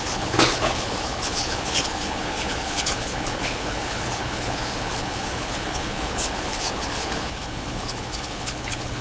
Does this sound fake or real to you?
fake